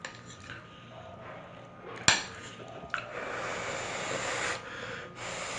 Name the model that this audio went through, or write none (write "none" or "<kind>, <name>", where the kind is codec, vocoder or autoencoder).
none